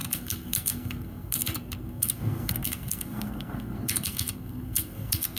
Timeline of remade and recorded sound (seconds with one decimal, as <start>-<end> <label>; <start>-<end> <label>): 0.0-5.4 remade